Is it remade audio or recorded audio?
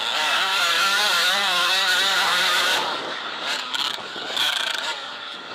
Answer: remade